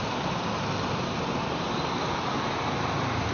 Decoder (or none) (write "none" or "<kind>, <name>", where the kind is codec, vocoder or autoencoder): none